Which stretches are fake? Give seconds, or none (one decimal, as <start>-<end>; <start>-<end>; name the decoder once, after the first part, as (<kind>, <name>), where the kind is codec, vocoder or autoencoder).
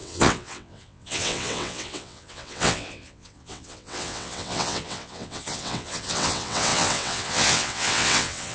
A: 0.0-8.5 (vocoder, WaveNeXt)